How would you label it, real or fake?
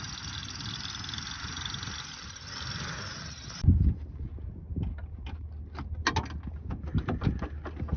real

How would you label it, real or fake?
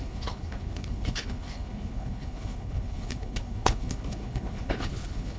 fake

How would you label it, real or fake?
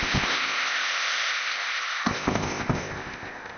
fake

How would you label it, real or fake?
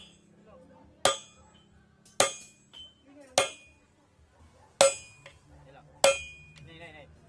real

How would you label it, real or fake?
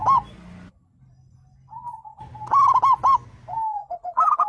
real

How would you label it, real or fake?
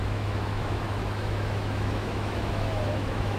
fake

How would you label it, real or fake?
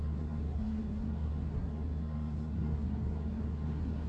fake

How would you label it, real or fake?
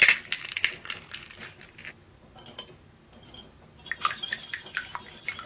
real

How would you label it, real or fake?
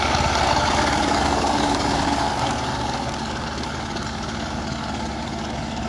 fake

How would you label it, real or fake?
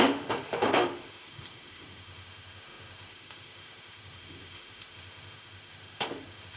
fake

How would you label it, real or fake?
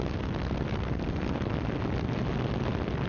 real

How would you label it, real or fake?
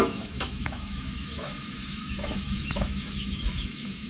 fake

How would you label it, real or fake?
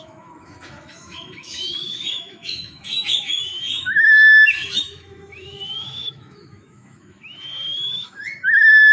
fake